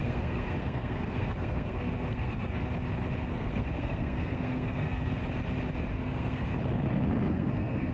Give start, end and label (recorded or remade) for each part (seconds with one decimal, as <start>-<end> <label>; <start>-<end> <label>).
0.0-2.6 remade; 2.6-3.3 recorded; 3.3-5.2 remade; 5.2-5.9 recorded; 5.9-6.5 remade; 6.5-7.3 recorded; 7.3-7.9 remade